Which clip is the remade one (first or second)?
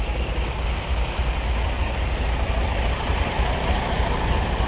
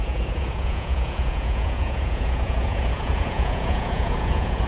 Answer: second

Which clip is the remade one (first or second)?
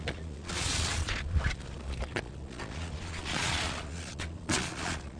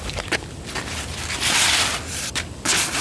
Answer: first